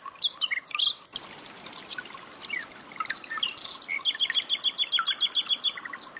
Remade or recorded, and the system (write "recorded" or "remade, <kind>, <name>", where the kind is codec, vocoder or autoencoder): recorded